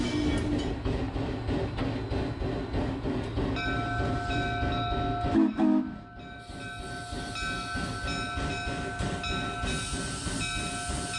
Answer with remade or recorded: recorded